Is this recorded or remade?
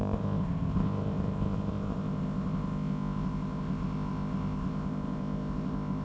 remade